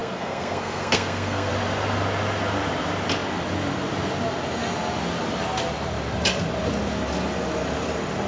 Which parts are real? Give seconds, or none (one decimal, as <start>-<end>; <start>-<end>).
1.5-8.3